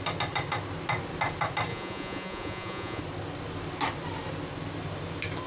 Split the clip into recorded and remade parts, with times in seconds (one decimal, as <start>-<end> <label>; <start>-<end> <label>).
0.0-1.7 recorded; 1.7-3.0 remade; 3.0-5.5 recorded